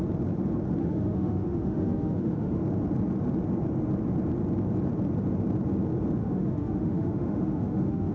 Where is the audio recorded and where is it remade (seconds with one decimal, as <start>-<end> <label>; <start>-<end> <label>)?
0.0-0.8 recorded; 0.8-2.6 remade; 2.6-6.2 recorded; 6.2-8.1 remade